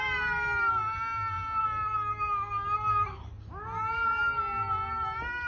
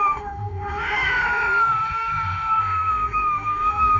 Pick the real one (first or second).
first